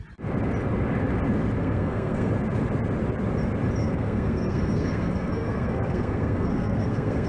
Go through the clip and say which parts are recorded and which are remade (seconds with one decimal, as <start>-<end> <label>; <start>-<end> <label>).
0.0-1.6 recorded; 1.6-2.3 remade; 2.3-3.8 recorded; 3.8-7.3 remade